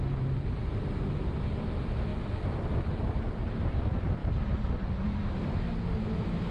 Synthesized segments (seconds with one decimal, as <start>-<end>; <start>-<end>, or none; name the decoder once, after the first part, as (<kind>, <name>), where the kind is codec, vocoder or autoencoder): none